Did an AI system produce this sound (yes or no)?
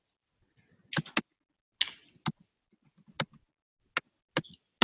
no